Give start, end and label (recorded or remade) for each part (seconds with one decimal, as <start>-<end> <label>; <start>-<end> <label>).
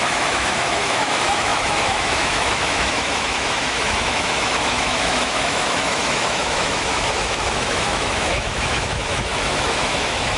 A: 0.0-10.4 remade